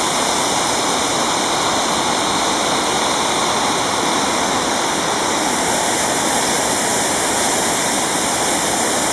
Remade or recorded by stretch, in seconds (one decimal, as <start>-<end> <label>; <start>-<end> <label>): 0.0-9.1 recorded